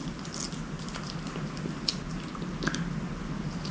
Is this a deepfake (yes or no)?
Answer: no